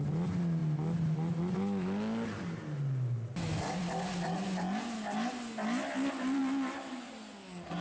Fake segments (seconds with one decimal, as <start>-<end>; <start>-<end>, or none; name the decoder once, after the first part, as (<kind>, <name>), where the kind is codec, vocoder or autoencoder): none